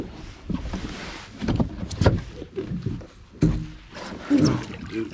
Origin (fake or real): real